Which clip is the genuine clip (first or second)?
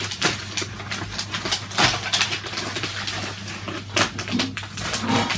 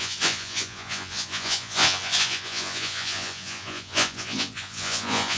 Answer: first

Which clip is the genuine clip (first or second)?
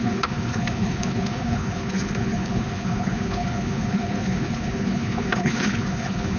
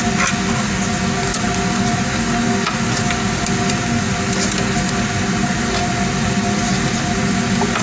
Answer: second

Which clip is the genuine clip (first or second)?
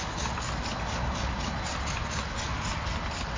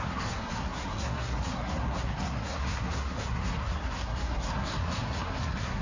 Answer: first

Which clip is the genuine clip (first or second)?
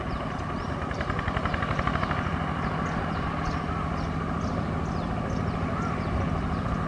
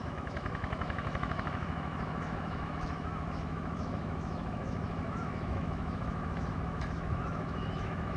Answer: first